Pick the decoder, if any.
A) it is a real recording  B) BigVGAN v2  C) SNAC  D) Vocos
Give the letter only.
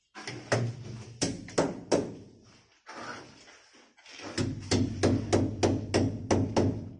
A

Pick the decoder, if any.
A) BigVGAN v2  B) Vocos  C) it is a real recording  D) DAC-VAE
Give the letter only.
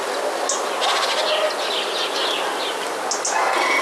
C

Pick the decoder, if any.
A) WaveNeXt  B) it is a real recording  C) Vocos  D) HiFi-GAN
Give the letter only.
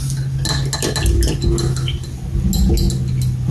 B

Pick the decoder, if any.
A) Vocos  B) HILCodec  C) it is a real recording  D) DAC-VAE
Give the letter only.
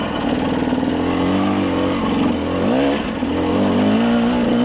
C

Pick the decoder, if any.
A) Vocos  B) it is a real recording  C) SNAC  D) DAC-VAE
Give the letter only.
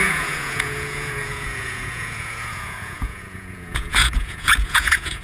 A